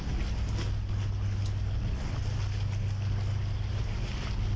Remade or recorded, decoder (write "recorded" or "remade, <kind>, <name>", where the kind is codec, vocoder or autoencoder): recorded